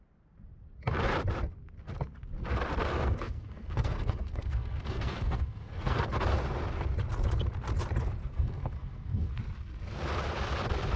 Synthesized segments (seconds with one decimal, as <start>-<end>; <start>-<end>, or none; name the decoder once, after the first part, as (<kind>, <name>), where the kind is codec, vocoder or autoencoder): 2.8-6.1 (codec, SNAC); 8.2-9.3